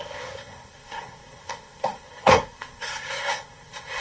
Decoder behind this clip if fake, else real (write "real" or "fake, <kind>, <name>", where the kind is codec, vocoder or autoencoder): fake, codec, SNAC